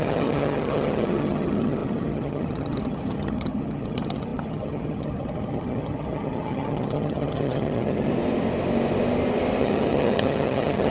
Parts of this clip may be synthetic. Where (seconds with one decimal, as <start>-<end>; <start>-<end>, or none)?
0.0-8.1; 9.6-10.9